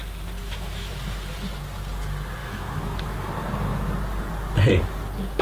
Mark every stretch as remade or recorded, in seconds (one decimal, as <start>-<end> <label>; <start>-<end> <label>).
0.0-0.4 recorded; 0.4-0.9 remade; 0.9-2.4 recorded; 2.4-3.3 remade; 3.3-5.4 recorded

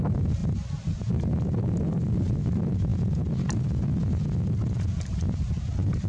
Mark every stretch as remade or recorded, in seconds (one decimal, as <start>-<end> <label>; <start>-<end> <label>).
0.0-6.1 recorded

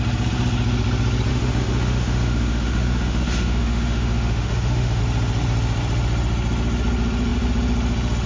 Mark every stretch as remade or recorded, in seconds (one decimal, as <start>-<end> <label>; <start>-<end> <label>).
0.0-1.3 recorded; 1.3-5.0 remade; 5.0-8.3 recorded